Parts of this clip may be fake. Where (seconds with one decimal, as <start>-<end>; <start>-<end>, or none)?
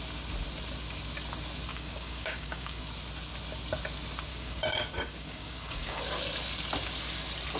1.7-2.8; 4.3-6.0